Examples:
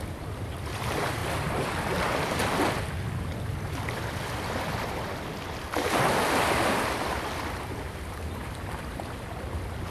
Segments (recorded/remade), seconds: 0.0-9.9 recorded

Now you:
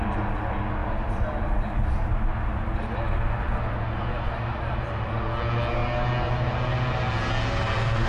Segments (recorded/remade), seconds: 0.0-8.1 recorded

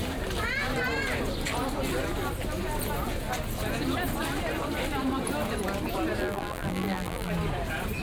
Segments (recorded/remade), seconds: 0.0-6.2 recorded; 6.2-7.3 remade; 7.3-8.0 recorded

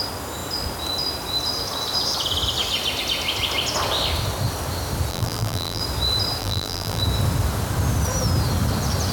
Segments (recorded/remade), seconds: 0.0-5.1 recorded; 5.1-5.8 remade; 5.8-6.4 recorded; 6.4-7.0 remade; 7.0-9.1 recorded

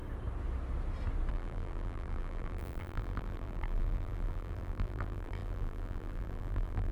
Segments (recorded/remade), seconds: 0.0-1.3 recorded; 1.3-6.9 remade

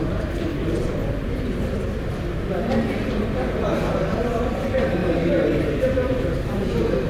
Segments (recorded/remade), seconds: 0.0-0.5 remade; 0.5-4.5 recorded; 4.5-5.0 remade; 5.0-5.6 recorded; 5.6-7.1 remade